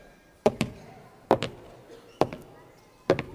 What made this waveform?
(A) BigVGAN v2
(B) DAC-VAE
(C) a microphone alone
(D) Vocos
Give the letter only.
C